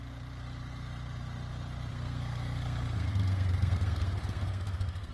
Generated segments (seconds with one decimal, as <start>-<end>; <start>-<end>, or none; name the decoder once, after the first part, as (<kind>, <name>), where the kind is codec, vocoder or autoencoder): 1.9-5.1 (codec, SNAC)